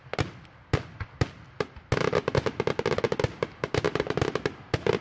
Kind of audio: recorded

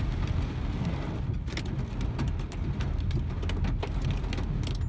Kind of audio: recorded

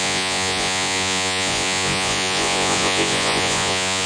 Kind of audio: remade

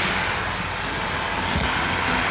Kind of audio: recorded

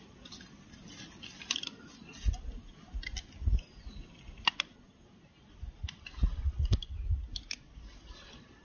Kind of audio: recorded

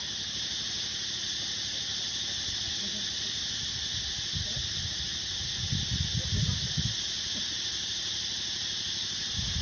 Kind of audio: recorded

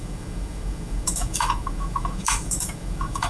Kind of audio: remade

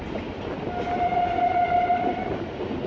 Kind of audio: recorded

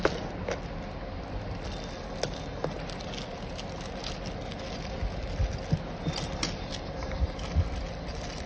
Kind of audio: recorded